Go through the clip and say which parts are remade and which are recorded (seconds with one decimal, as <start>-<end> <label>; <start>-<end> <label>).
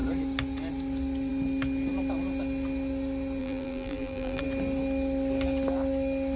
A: 0.0-3.4 recorded; 3.4-4.4 remade; 4.4-6.4 recorded